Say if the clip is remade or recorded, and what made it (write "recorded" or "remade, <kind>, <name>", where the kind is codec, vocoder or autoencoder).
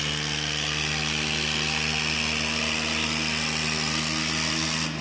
recorded